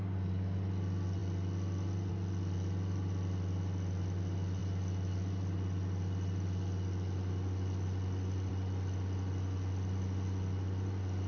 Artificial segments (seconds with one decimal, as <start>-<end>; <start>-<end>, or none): none